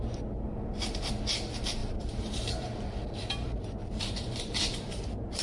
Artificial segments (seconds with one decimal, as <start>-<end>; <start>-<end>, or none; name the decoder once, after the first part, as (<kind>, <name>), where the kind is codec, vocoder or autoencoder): 0.0-1.1 (vocoder, BigVGAN v2); 1.8-4.9